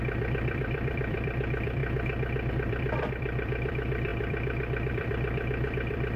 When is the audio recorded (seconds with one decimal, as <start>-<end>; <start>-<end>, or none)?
1.8-2.5